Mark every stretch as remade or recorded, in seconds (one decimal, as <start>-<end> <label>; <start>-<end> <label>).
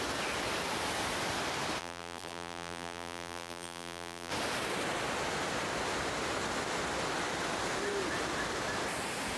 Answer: 0.0-1.8 recorded; 1.8-4.3 remade; 4.3-9.4 recorded